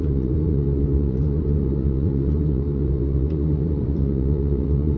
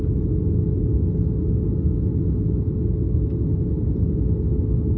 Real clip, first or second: second